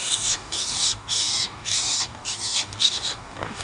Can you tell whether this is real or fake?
fake